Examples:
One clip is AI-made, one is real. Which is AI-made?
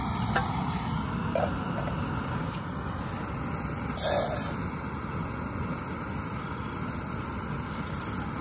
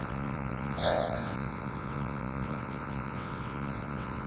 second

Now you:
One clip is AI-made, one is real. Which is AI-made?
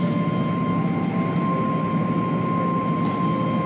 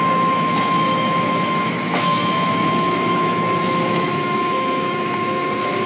second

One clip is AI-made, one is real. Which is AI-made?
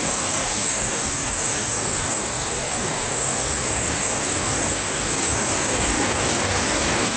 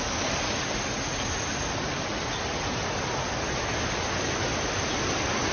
first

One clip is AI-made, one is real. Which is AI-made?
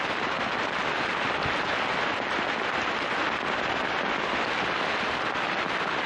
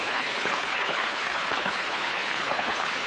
second